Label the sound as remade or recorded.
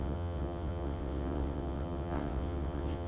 remade